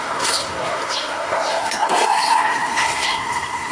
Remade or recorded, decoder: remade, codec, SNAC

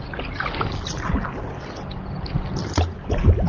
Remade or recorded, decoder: recorded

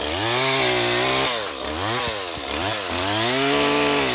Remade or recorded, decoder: recorded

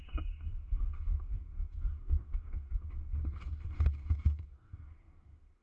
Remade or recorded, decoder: remade, codec, DAC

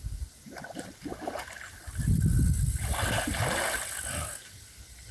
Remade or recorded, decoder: recorded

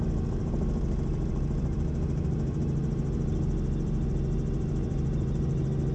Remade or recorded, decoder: remade, vocoder, BigVGAN v2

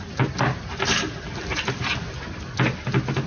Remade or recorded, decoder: recorded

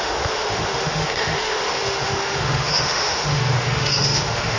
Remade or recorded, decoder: remade, autoencoder, DAC-VAE